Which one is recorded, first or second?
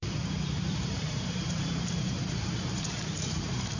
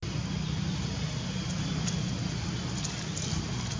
second